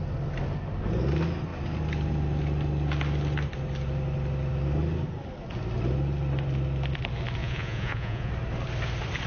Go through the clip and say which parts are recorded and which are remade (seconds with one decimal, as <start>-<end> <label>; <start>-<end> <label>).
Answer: 0.0-7.4 recorded; 7.4-8.3 remade; 8.3-9.3 recorded